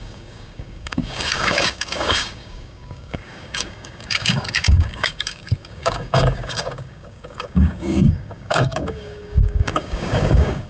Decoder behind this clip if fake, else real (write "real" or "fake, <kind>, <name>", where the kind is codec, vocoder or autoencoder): fake, codec, DAC